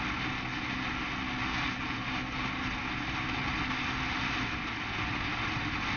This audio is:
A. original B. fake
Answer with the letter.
A